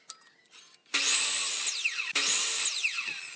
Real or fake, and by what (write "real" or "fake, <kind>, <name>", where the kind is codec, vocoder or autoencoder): real